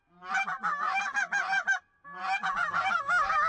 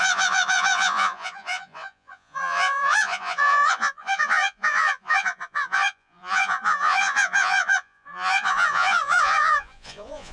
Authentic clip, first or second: first